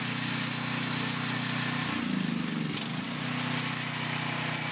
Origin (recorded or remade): recorded